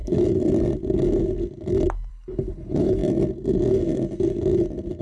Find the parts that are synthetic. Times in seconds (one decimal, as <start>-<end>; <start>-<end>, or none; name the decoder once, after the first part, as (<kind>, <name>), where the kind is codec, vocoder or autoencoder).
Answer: 2.1-3.0 (codec, HILCodec)